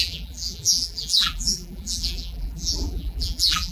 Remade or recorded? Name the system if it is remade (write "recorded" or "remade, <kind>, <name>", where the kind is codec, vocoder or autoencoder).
remade, vocoder, BigVGAN v2